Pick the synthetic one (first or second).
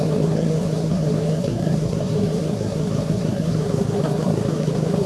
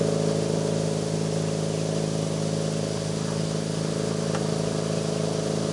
first